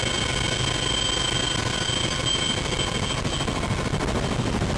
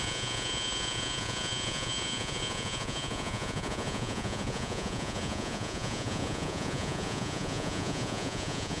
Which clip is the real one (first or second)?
first